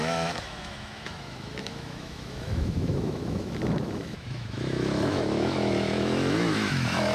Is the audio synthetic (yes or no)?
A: yes